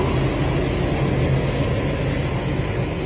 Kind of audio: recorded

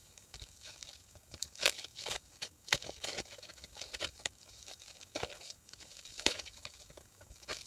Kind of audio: remade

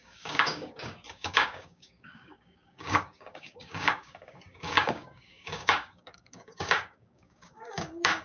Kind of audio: remade